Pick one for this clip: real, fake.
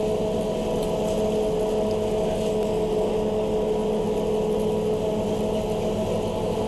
real